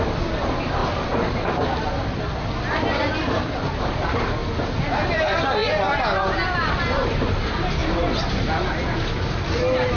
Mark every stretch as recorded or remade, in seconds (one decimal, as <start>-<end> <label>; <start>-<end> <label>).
0.0-10.0 recorded